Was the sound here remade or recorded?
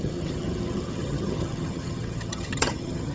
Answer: remade